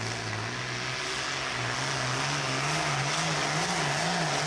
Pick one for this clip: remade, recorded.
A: recorded